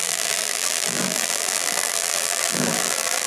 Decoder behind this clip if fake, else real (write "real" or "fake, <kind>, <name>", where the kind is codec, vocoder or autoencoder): fake, vocoder, BigVGAN v2